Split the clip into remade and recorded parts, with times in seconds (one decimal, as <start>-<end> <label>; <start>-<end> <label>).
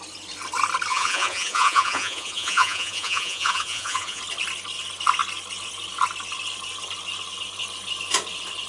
0.0-0.9 recorded; 0.9-4.2 remade; 4.2-8.7 recorded